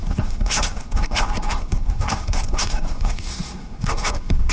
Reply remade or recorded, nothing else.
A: remade